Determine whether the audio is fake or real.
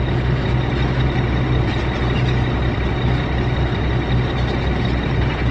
real